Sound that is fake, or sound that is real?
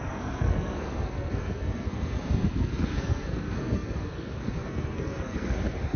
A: fake